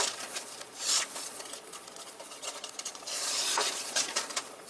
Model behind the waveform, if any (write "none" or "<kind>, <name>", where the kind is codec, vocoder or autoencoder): vocoder, Vocos